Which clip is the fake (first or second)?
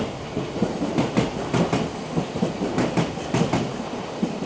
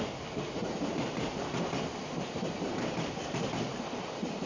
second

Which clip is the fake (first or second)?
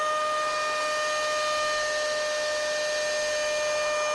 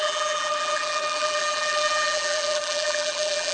second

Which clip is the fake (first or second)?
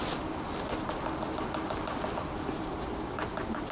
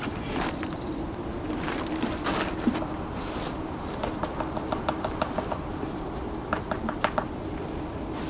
second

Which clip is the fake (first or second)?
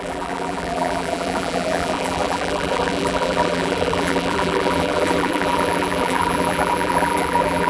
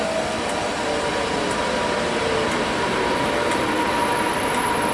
first